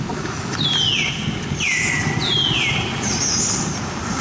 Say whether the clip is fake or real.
real